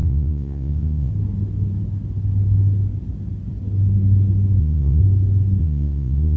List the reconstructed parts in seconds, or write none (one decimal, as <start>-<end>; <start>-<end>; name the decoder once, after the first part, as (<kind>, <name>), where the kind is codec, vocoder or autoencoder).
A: 0.0-1.1 (vocoder, Vocos); 4.6-5.0; 5.6-6.4